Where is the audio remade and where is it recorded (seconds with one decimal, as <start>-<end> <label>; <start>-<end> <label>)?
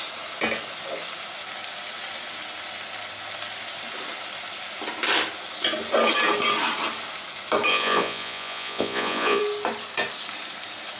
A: 0.0-7.7 recorded; 7.7-9.4 remade; 9.4-11.0 recorded